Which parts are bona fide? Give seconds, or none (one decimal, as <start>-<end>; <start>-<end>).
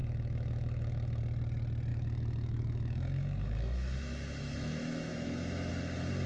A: 1.2-1.9; 5.7-6.3